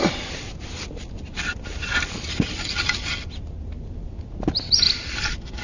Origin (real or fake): real